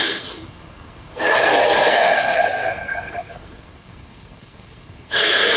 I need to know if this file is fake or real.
fake